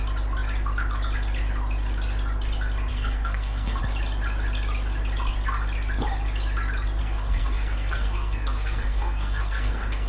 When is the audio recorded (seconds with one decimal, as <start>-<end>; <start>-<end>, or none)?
0.0-2.9; 3.8-7.0